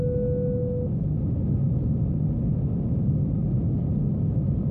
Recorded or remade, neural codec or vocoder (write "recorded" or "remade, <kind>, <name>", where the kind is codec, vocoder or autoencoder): recorded